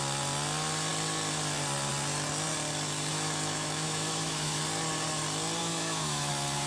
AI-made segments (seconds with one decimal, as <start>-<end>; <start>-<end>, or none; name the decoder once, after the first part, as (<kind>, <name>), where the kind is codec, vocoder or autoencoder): 3.1-4.6 (autoencoder, DAC-VAE); 5.6-6.3